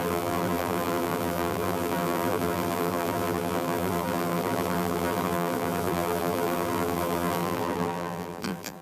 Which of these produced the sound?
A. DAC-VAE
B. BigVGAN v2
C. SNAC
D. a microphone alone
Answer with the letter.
B